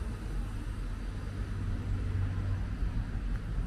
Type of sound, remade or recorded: recorded